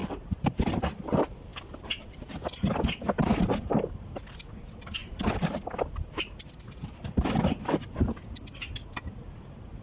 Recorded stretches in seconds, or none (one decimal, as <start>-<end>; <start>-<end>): 0.6-9.8